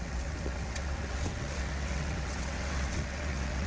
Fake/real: fake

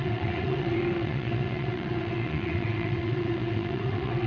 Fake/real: fake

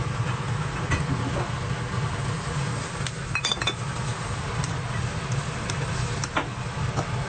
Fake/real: real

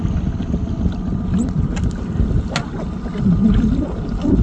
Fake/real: real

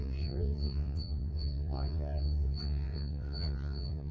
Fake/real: fake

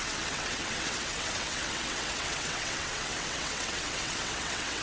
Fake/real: fake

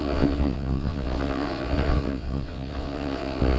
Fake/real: fake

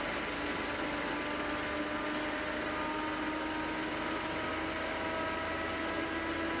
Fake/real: real